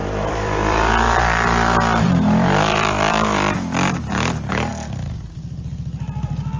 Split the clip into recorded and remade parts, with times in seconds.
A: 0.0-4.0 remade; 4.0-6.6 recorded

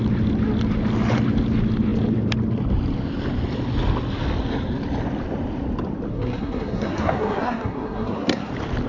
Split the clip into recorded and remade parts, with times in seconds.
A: 0.0-6.1 recorded; 6.1-8.5 remade; 8.5-8.9 recorded

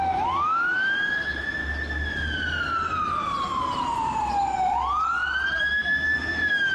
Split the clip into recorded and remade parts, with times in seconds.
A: 0.0-1.6 remade; 1.6-5.6 recorded; 5.6-6.7 remade

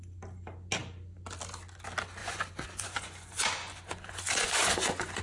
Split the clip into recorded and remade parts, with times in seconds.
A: 0.0-2.2 recorded; 2.2-5.2 remade

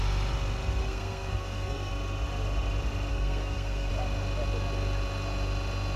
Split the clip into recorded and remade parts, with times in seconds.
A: 0.0-0.8 recorded; 0.8-1.9 remade; 1.9-3.1 recorded; 3.1-3.9 remade; 3.9-6.0 recorded

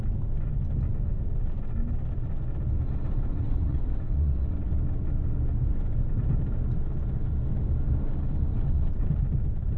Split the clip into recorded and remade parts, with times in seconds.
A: 0.0-3.3 recorded; 3.3-4.7 remade; 4.7-8.5 recorded; 8.5-9.1 remade; 9.1-9.8 recorded

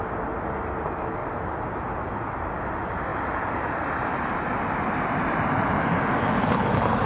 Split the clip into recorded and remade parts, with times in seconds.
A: 0.0-7.1 recorded

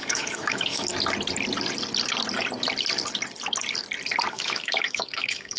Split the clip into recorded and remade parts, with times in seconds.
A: 0.0-0.9 remade; 0.9-4.3 recorded; 4.3-5.6 remade